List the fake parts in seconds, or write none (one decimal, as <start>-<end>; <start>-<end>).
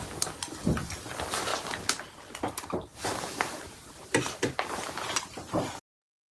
2.9-5.7